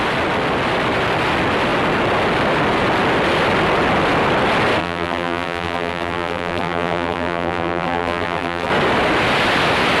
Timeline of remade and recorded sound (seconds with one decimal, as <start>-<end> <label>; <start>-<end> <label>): 0.0-4.8 recorded; 4.8-8.7 remade; 8.7-10.0 recorded